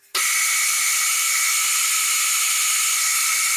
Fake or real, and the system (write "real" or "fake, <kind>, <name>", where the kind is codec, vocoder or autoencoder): real